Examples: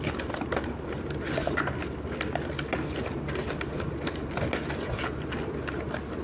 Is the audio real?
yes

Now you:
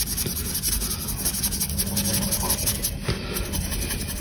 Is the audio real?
yes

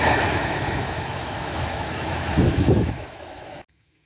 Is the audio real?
no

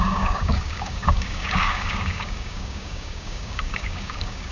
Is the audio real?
no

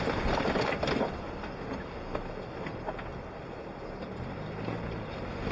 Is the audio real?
yes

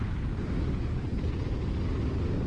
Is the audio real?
yes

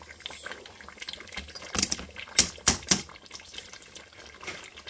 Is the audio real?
yes